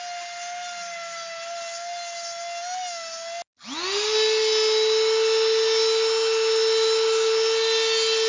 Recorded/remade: recorded